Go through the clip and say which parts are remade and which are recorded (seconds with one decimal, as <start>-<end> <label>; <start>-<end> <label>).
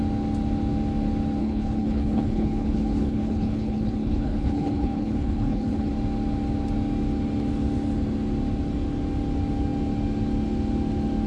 0.0-1.4 recorded; 1.4-5.9 remade; 5.9-11.3 recorded